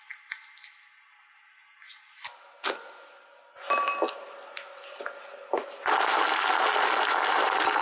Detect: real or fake real